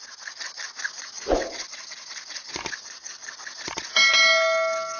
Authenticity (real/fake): real